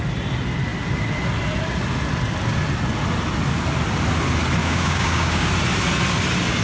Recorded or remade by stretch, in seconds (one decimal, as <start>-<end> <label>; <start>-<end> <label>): 0.0-4.6 recorded; 4.6-5.5 remade; 5.5-6.6 recorded